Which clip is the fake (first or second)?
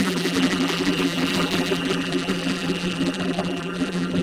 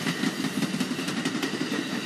first